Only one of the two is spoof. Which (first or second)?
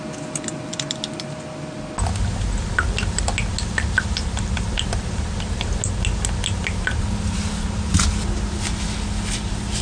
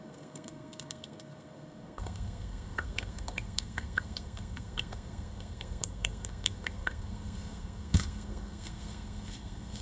second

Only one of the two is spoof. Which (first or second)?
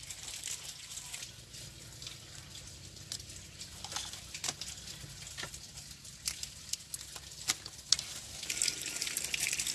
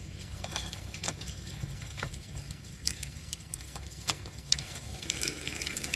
second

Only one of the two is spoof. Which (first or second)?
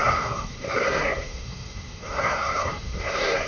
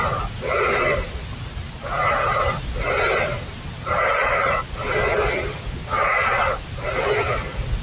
first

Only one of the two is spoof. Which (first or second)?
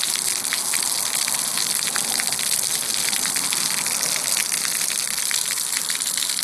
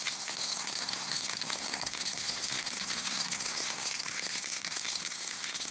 second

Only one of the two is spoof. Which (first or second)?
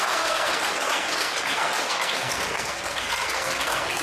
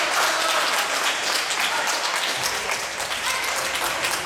first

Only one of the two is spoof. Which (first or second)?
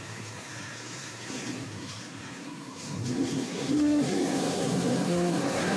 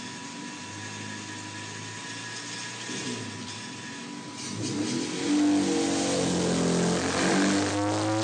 first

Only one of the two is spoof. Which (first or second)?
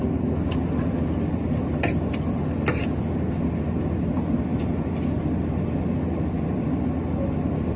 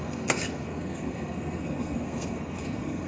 second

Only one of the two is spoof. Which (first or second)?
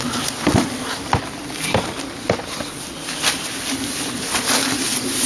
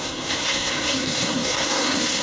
second